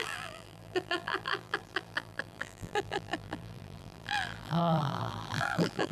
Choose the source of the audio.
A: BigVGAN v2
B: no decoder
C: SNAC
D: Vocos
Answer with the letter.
A